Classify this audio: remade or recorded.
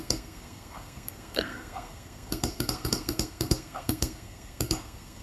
remade